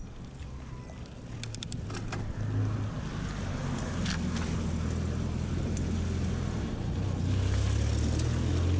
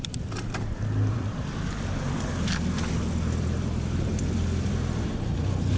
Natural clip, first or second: first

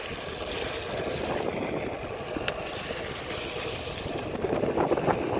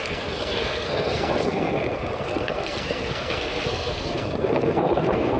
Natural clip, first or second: first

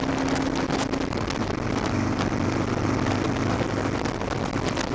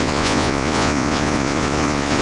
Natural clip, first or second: first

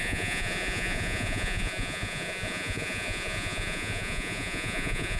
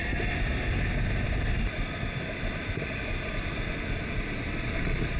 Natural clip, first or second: second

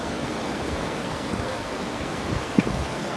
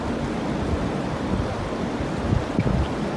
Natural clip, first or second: second